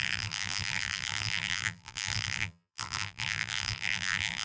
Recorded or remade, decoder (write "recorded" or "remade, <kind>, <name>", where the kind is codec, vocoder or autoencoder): remade, vocoder, BigVGAN v2